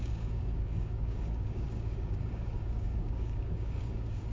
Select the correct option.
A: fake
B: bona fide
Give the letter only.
A